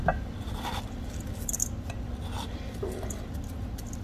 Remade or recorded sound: recorded